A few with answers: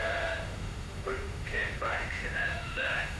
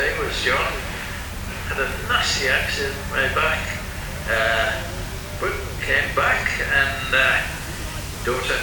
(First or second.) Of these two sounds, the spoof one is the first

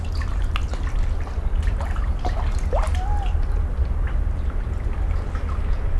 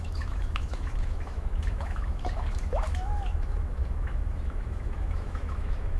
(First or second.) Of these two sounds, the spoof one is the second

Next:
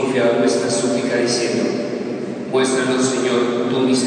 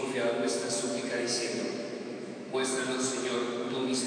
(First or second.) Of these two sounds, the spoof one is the second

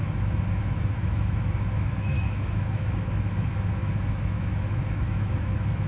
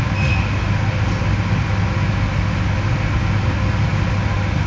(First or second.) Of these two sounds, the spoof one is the first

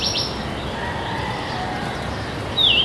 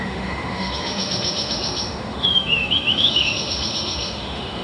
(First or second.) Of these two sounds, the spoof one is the second